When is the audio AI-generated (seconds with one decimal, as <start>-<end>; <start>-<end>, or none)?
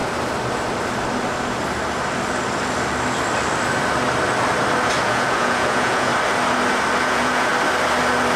5.0-6.1; 7.0-7.5